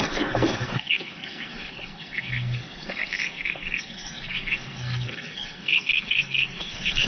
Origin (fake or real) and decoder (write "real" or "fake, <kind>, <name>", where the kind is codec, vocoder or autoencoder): fake, codec, SNAC